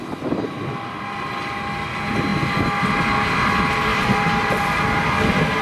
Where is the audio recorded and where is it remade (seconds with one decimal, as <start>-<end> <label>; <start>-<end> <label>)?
0.0-3.9 recorded; 3.9-4.6 remade; 4.6-5.6 recorded